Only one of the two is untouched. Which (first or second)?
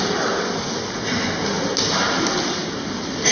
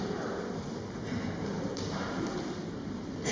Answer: first